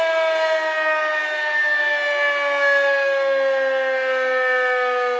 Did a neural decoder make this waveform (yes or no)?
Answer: no